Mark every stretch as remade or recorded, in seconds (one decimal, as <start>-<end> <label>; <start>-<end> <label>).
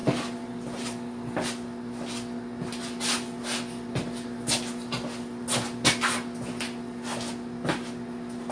0.0-8.5 recorded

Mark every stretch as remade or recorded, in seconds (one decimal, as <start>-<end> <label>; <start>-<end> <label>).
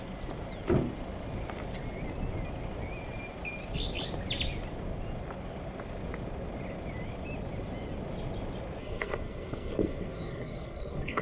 0.0-8.8 recorded; 8.8-11.2 remade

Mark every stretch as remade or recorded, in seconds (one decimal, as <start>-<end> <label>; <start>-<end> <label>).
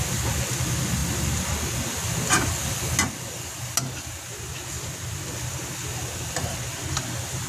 0.0-7.5 recorded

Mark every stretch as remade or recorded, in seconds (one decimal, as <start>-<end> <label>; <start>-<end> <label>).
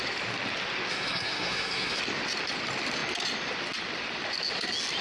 0.0-0.9 recorded; 0.9-2.0 remade; 2.0-5.0 recorded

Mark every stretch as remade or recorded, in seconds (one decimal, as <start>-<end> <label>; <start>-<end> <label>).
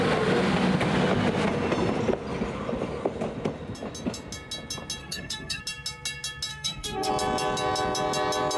0.0-5.0 recorded; 5.0-5.6 remade; 5.6-6.5 recorded; 6.5-7.1 remade; 7.1-8.6 recorded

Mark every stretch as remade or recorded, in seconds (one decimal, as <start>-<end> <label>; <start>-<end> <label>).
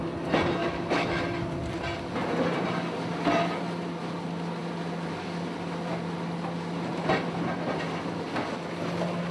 0.0-0.6 recorded; 0.6-1.2 remade; 1.2-9.3 recorded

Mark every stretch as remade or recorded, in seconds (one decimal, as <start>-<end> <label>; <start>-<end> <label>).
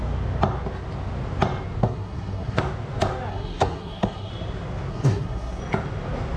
0.0-1.8 recorded; 1.8-2.6 remade; 2.6-3.3 recorded; 3.3-4.3 remade; 4.3-4.9 recorded; 4.9-5.6 remade; 5.6-6.4 recorded